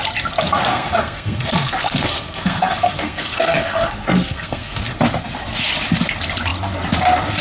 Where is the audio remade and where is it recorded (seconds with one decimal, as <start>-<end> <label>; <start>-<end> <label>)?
0.0-0.7 recorded; 0.7-5.0 remade; 5.0-7.4 recorded